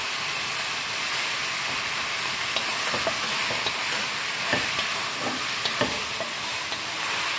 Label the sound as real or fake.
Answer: real